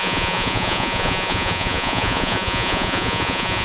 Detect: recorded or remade remade